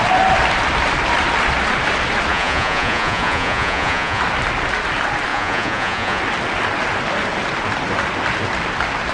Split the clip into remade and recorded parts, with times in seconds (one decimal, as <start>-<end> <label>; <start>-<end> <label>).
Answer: 0.0-2.3 recorded; 2.3-4.2 remade; 4.2-5.3 recorded; 5.3-6.2 remade; 6.2-9.1 recorded